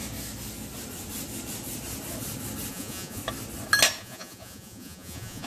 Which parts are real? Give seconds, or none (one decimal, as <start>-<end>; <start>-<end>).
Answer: 0.0-2.7; 3.2-4.0